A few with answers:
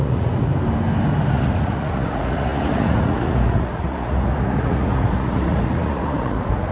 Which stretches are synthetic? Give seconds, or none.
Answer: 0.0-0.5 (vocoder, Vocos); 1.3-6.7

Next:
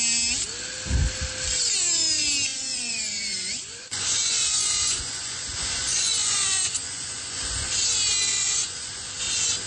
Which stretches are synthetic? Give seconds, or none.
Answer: 2.5-7.7 (vocoder, Vocos); 8.3-9.1

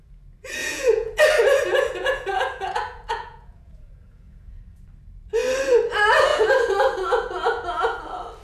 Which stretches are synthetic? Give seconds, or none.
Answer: 0.6-1.2 (vocoder, Vocos); 1.7-4.6; 6.3-8.0

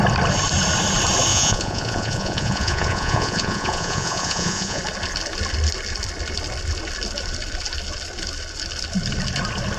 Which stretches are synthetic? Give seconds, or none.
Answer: 1.3-4.8 (vocoder, Vocos)

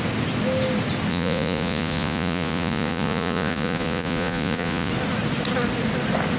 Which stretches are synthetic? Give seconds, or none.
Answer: 1.1-4.9 (vocoder, Vocos)

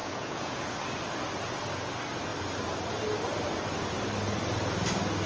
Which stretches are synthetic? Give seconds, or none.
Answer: 0.0-0.7 (vocoder, Vocos)